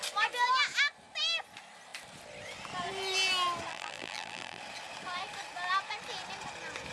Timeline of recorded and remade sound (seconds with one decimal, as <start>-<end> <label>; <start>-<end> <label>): 0.0-3.7 recorded; 3.7-4.6 remade; 4.6-6.9 recorded